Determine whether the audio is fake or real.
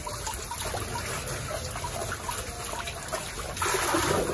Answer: real